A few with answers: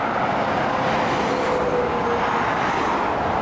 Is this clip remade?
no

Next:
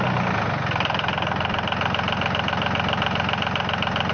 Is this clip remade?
no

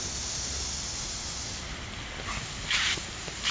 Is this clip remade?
no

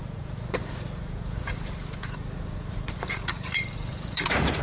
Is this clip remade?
yes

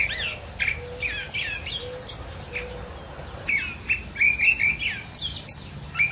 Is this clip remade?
no